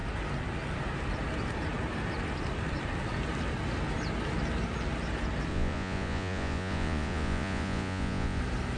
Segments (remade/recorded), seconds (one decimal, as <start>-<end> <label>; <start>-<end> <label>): 0.0-5.5 recorded; 5.5-8.4 remade; 8.4-8.8 recorded